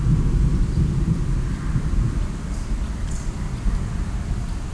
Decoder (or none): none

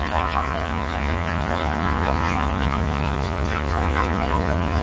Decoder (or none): vocoder, Vocos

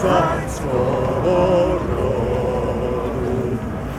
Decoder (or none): none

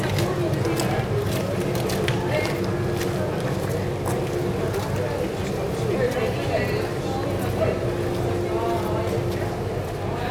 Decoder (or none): none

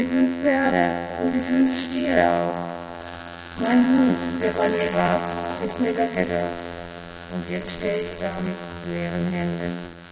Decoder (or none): vocoder, BigVGAN v2